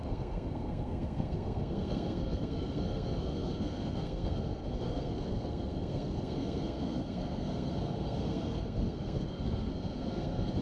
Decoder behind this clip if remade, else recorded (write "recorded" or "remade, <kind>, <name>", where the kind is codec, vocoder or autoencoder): remade, codec, SNAC